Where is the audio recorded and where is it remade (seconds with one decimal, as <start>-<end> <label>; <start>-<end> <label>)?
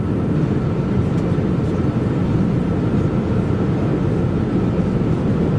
0.0-5.6 recorded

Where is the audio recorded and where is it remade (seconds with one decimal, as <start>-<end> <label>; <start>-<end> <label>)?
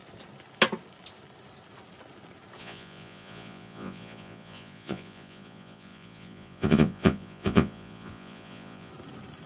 0.0-2.6 recorded; 2.6-8.9 remade; 8.9-9.5 recorded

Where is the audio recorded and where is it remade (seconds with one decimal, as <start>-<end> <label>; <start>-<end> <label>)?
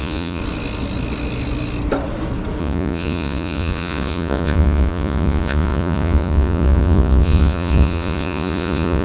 0.0-0.4 remade; 0.4-2.6 recorded; 2.6-9.0 remade